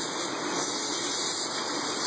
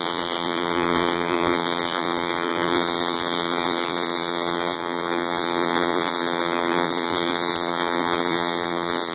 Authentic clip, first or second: first